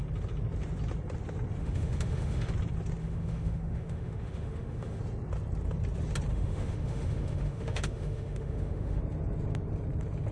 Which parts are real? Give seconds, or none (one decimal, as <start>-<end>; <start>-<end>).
0.0-1.6; 2.5-3.0; 5.0-6.3; 9.0-10.3